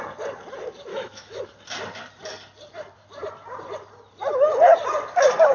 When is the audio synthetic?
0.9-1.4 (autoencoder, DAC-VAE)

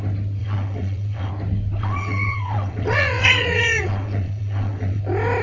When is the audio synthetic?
0.4-1.3 (vocoder, WaveNeXt); 1.8-5.0

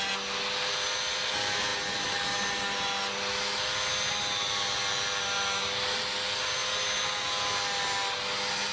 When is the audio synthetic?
none

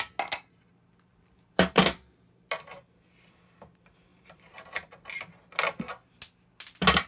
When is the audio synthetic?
1.1-2.2 (vocoder, BigVGAN v2); 4.1-5.1